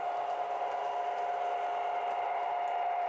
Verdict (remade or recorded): recorded